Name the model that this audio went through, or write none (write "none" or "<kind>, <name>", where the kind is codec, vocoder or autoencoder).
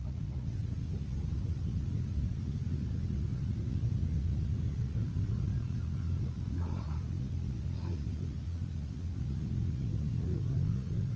vocoder, Vocos